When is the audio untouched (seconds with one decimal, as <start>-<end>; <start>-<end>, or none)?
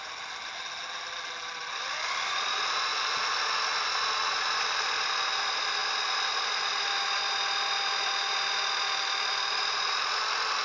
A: 0.0-10.6